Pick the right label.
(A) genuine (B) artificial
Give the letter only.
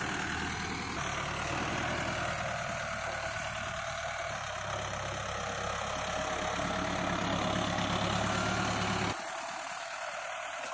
A